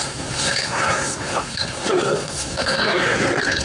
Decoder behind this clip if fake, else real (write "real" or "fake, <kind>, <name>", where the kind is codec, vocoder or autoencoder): fake, codec, SNAC